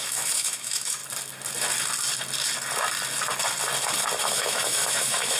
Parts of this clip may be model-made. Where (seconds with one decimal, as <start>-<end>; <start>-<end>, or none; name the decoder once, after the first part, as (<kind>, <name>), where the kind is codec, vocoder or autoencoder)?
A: 0.0-1.0 (autoencoder, DAC-VAE); 4.2-5.4